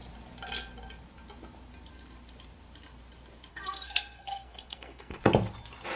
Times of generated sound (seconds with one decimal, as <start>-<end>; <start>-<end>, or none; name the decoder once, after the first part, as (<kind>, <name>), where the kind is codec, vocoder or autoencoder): 3.5-5.2 (codec, SNAC)